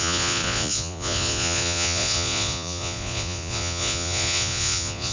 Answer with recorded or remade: remade